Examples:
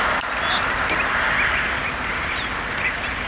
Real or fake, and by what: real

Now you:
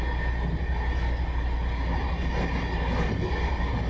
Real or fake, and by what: real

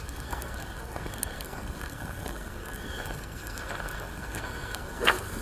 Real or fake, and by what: fake, codec, SNAC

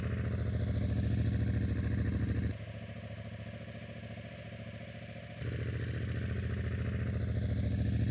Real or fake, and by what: real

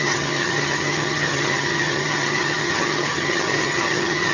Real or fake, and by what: fake, vocoder, HiFi-GAN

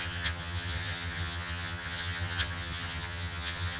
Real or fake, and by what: fake, vocoder, HiFi-GAN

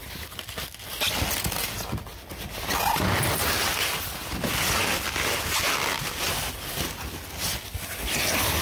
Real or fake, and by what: real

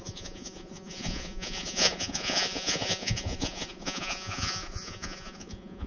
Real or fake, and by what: fake, vocoder, Vocos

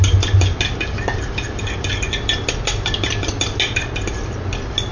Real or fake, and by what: real